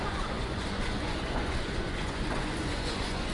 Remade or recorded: remade